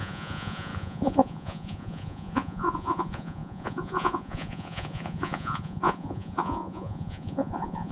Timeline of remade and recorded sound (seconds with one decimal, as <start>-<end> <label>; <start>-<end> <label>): 0.0-7.9 remade